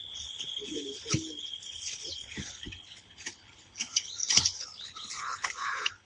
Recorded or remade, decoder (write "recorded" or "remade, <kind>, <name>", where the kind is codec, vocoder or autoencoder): remade, codec, HILCodec